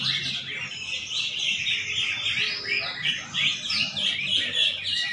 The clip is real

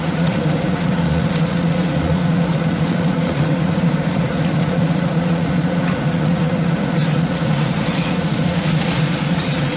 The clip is fake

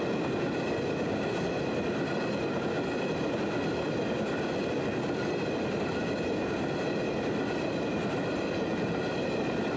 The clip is real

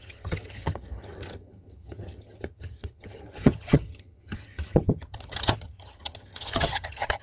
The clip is fake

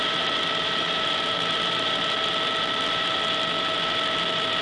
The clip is real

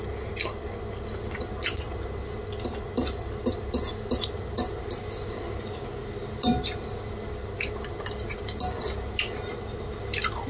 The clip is real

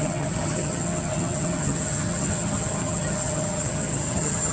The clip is fake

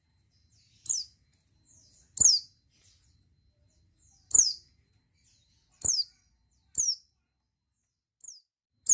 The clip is real